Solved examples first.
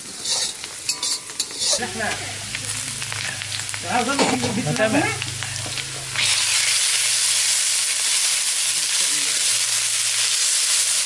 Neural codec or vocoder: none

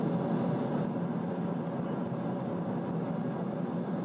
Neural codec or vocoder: none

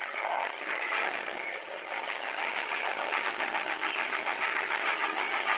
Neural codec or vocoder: vocoder, HiFi-GAN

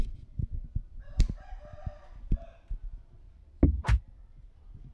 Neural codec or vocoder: none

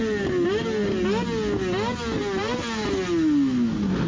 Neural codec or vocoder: none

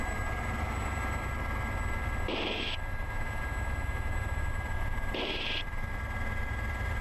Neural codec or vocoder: vocoder, BigVGAN v2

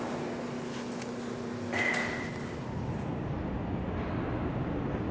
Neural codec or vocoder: none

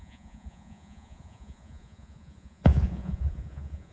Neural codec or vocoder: vocoder, Vocos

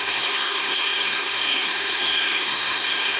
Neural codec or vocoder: codec, SNAC